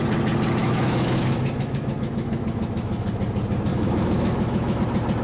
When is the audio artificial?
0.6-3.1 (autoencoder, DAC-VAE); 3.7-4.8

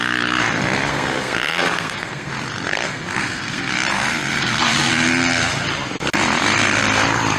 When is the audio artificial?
0.9-2.3 (codec, SNAC); 2.7-3.7; 4.3-4.9

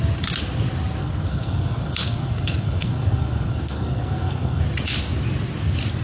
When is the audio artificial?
1.0-4.6 (codec, SNAC)

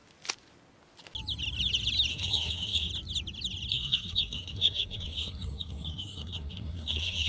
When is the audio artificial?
2.1-2.9 (codec, SNAC); 3.7-7.3

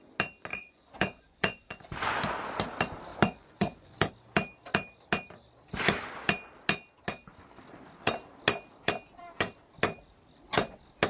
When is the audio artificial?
0.5-1.9 (vocoder, Vocos); 3.1-4.1